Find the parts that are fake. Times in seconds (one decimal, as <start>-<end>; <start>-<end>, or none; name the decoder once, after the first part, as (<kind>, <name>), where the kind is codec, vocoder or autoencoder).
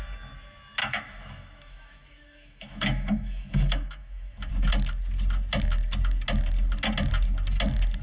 0.8-4.5 (autoencoder, DAC-VAE)